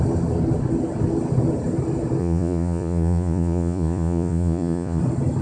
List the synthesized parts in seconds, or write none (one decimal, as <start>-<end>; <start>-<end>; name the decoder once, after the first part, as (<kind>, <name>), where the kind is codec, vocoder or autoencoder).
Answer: 2.2-5.0 (vocoder, Vocos)